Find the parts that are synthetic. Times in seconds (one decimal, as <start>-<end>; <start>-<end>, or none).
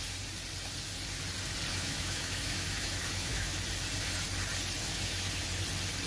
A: 1.7-3.6; 4.8-5.4